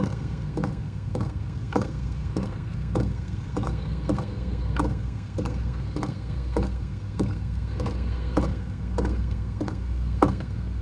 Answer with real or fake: fake